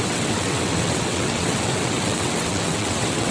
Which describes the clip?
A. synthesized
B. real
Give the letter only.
A